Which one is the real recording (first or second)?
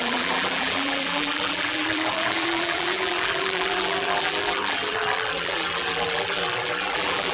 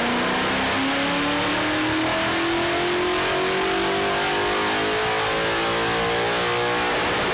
second